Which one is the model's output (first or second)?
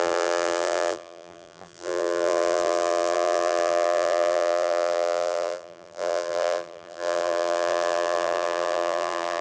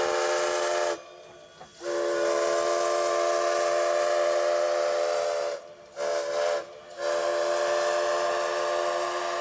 first